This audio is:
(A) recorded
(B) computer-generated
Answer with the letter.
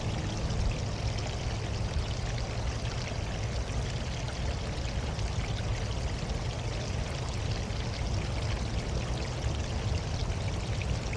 A